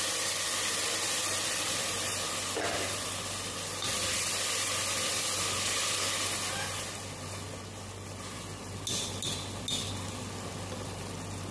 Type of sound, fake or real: real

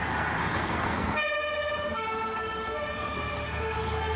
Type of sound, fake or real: fake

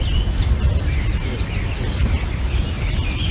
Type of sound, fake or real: real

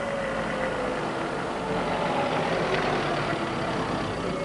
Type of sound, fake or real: real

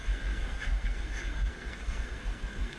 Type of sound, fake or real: fake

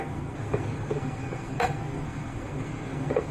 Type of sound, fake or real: fake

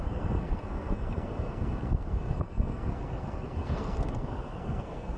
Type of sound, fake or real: fake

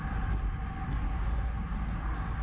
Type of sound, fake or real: real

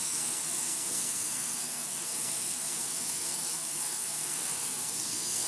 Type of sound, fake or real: fake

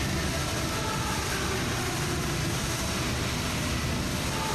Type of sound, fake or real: real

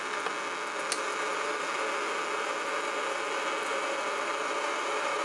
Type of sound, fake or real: real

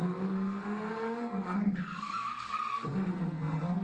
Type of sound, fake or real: fake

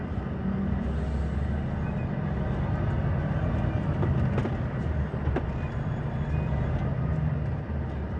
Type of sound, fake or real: real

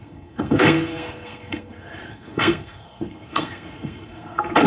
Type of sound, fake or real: fake